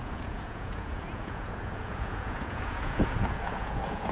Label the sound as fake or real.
fake